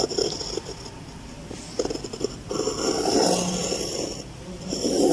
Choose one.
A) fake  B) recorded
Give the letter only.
B